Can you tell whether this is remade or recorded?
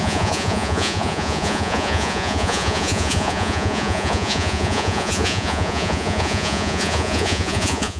remade